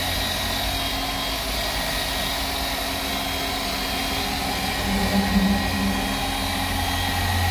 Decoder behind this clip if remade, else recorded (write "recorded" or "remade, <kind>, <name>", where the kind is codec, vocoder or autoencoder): recorded